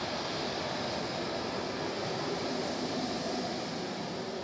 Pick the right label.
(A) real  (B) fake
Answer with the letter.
A